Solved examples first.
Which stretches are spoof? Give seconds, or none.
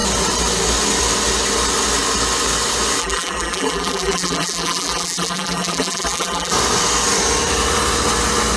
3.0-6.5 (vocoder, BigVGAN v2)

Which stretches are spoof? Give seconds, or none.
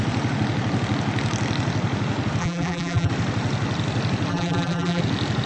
2.4-3.1 (vocoder, BigVGAN v2); 4.3-5.0